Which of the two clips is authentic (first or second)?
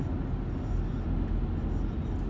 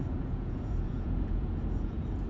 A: first